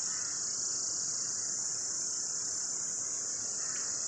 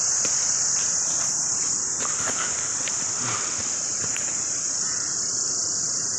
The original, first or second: first